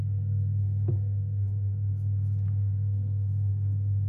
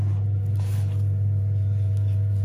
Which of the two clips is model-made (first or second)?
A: first